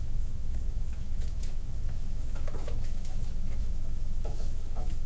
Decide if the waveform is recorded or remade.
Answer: remade